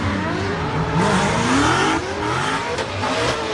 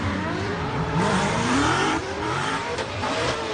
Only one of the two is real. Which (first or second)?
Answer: first